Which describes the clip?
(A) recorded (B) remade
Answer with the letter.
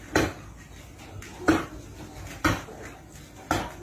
A